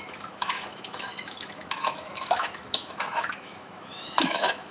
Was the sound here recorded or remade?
remade